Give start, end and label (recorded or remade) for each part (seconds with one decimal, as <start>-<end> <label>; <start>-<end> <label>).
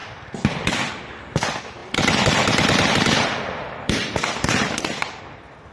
0.0-1.8 recorded; 1.8-5.2 remade; 5.2-5.7 recorded